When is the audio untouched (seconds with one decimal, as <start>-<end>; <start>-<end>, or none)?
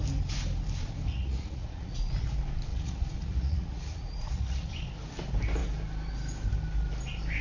0.0-1.1; 2.1-2.7; 4.7-7.4